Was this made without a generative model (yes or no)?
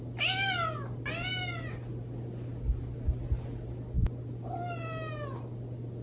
yes